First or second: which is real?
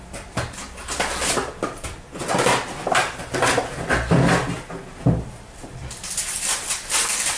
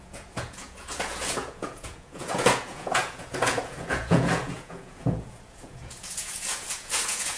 first